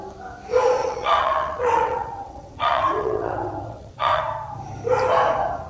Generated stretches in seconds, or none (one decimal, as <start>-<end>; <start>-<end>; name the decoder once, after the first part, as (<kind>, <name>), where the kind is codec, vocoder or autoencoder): 0.8-4.2 (vocoder, WaveNeXt)